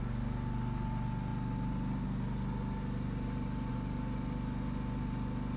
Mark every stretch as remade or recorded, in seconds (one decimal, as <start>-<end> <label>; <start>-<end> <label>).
0.0-5.6 recorded